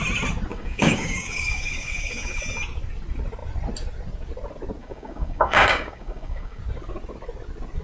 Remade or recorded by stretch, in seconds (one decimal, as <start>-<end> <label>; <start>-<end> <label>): 0.0-0.5 recorded; 0.5-2.4 remade; 2.4-4.8 recorded; 4.8-6.6 remade; 6.6-7.8 recorded